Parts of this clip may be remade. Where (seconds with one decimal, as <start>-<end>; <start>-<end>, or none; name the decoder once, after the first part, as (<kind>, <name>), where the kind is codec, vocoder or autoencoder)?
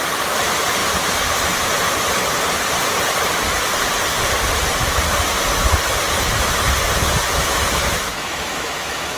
7.8-9.2 (autoencoder, DAC-VAE)